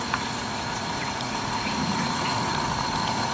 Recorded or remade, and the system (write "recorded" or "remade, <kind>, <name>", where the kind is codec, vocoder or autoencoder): remade, vocoder, Vocos